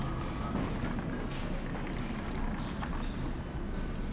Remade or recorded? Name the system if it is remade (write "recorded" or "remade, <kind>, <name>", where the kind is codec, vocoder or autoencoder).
recorded